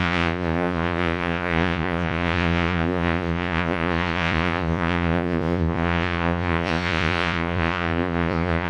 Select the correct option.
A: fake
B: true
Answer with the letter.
A